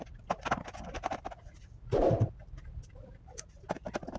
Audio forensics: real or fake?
real